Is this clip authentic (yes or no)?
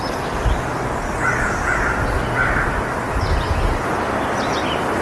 yes